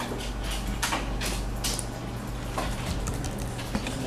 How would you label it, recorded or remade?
recorded